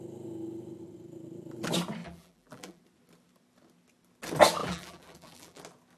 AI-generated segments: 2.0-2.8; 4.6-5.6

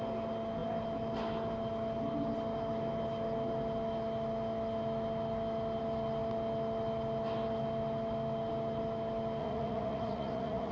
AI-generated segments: 9.4-10.7

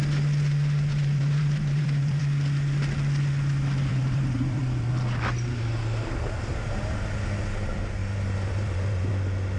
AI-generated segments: 0.9-2.2; 3.9-4.9; 8.0-9.1

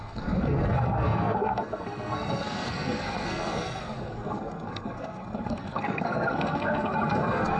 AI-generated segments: 0.0-7.6

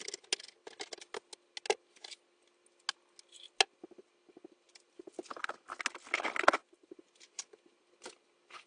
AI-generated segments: none

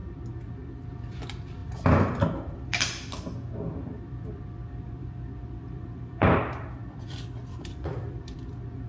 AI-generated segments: 0.9-8.9

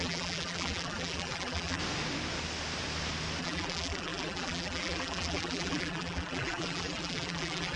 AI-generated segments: 0.0-1.8; 3.4-7.8